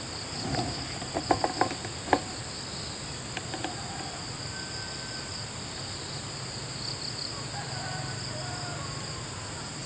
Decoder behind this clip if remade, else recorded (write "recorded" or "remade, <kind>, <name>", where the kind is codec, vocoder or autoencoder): recorded